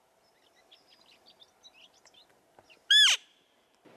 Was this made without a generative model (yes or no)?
yes